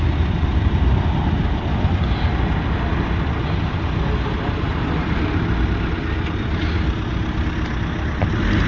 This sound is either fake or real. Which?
real